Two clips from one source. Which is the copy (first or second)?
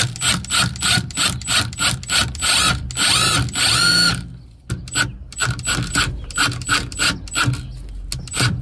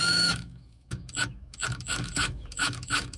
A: second